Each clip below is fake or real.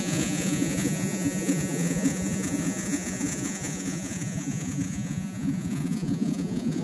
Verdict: fake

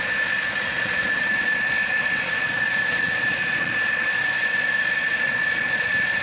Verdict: fake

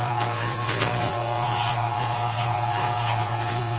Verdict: fake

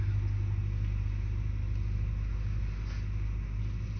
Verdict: real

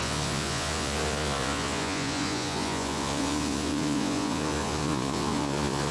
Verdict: fake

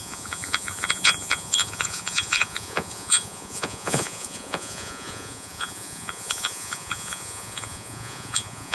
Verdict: fake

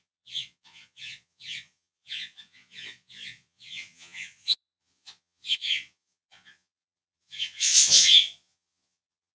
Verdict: fake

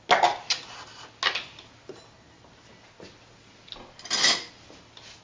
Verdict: real